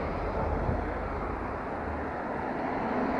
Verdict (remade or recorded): recorded